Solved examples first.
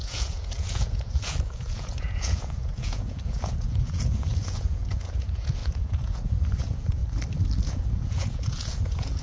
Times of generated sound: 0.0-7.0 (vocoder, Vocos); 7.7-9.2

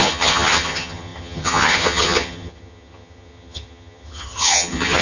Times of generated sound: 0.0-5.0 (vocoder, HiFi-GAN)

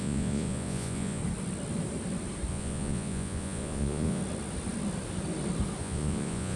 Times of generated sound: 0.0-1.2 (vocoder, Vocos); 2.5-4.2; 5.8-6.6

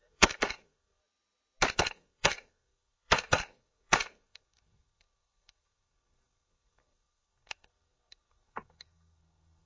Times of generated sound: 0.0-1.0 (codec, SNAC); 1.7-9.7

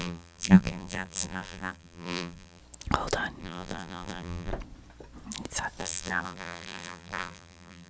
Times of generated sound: 0.0-2.6 (vocoder, BigVGAN v2); 3.4-4.5; 5.8-7.9

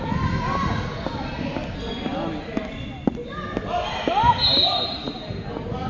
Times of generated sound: none

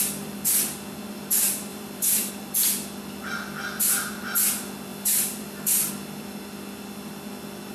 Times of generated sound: 1.7-2.3 (vocoder, BigVGAN v2); 4.9-5.9